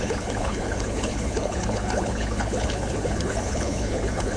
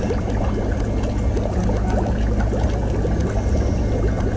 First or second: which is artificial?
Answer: first